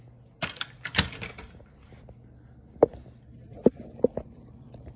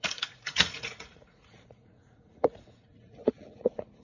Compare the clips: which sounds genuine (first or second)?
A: first